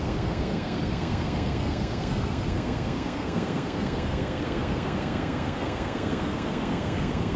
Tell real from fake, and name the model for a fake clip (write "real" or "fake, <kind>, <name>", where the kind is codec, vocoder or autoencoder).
fake, codec, SNAC